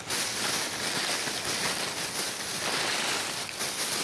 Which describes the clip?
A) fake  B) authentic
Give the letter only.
B